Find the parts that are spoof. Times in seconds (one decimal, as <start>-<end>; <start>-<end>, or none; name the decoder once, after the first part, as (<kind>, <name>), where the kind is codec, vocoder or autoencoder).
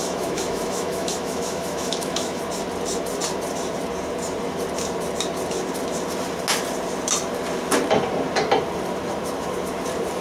0.0-2.4 (autoencoder, DAC-VAE)